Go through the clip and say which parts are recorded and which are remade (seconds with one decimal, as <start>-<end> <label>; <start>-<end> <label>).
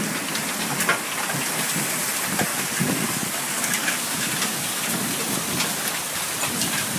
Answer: 0.0-2.5 recorded; 2.5-5.0 remade; 5.0-7.0 recorded